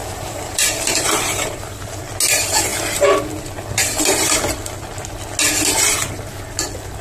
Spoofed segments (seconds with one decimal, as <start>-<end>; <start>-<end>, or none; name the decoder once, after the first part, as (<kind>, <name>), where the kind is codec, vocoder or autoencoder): 0.0-2.0 (vocoder, BigVGAN v2)

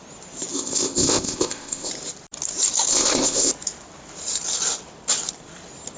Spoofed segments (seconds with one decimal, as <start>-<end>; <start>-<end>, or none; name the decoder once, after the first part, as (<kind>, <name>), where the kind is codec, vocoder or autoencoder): 0.5-1.9 (codec, ZipCodec); 2.9-3.5

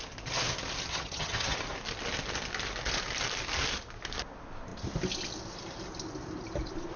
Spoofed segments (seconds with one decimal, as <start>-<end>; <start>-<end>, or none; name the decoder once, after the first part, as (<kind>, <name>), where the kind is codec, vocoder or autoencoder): 0.9-1.6 (vocoder, HiFi-GAN)

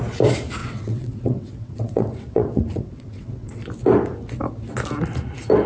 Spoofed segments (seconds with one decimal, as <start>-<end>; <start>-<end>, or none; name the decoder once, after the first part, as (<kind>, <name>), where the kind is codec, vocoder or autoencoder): 0.6-3.6 (vocoder, WaveNeXt)

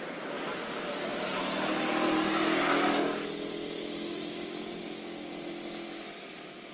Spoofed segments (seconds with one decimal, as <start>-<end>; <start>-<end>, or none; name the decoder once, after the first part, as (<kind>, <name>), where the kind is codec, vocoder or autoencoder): none

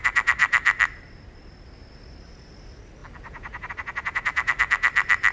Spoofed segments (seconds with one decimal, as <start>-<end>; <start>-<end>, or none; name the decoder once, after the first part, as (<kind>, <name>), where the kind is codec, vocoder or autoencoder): none

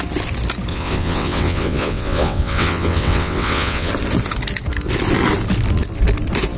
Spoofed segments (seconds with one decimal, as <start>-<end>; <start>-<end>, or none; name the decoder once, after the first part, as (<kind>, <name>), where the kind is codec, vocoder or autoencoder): 0.7-3.9 (vocoder, WaveNeXt)

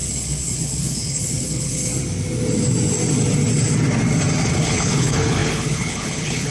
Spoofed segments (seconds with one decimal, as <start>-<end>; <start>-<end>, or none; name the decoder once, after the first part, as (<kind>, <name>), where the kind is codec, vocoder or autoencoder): 0.0-1.9 (codec, HILCodec); 4.5-6.5